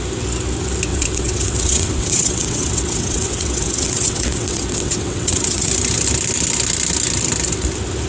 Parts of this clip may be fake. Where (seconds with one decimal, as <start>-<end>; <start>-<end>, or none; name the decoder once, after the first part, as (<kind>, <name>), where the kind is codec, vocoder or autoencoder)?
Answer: 0.9-5.7 (vocoder, WaveNeXt)